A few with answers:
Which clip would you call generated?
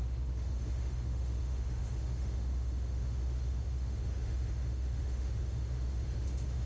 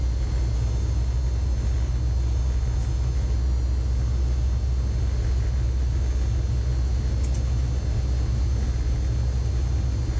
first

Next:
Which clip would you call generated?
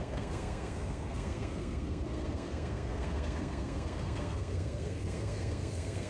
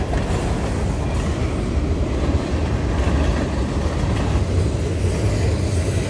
first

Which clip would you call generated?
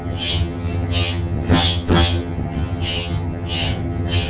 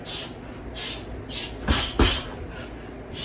first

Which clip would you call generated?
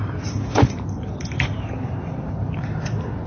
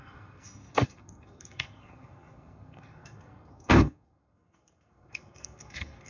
second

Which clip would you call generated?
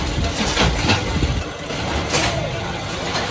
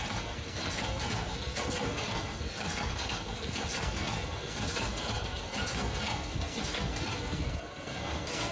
second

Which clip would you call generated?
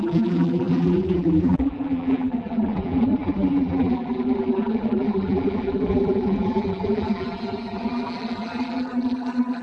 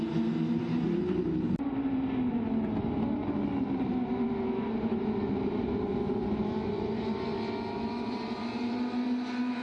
first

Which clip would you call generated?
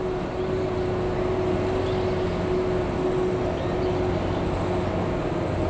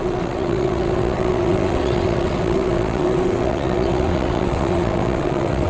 second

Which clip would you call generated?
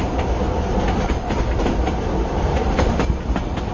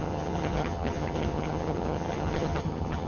second